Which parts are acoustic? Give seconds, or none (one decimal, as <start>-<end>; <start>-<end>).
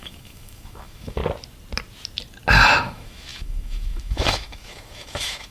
1.2-2.8